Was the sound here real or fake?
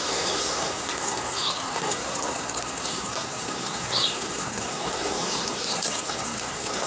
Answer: fake